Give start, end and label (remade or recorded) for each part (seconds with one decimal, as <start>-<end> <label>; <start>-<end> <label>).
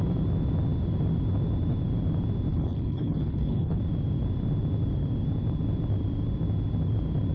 0.0-2.5 recorded; 2.5-3.8 remade; 3.8-7.3 recorded